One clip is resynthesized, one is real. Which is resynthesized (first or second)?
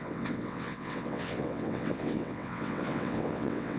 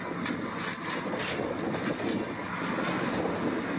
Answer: first